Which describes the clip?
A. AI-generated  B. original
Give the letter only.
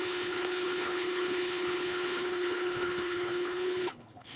A